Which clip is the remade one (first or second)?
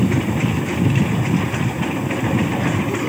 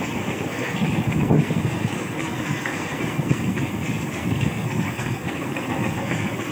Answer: second